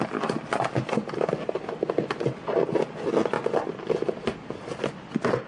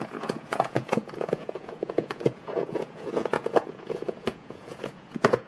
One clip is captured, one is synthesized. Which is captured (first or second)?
first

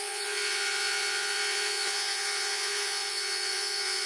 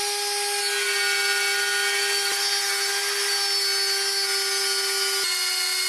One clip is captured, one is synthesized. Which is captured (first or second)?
second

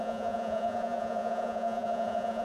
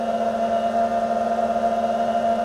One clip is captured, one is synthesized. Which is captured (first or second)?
second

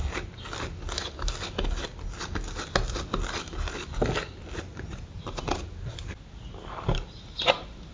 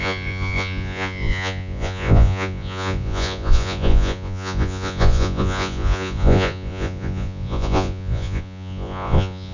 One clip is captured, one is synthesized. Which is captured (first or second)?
first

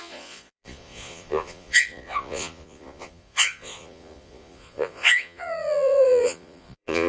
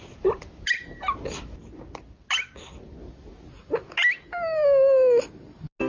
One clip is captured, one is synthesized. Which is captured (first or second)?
second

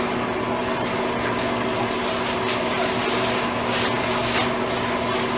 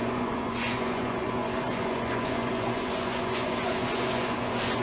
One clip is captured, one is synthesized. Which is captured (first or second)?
first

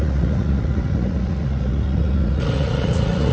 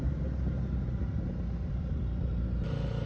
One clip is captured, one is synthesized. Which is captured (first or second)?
second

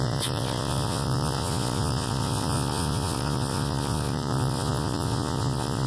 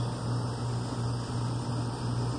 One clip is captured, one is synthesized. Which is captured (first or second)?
second